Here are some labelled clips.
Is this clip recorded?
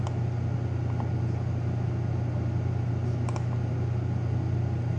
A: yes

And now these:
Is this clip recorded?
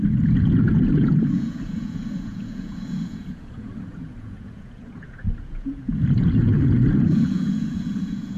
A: no